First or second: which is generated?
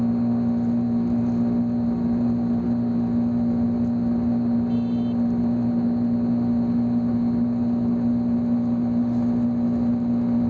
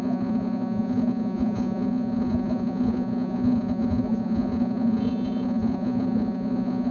second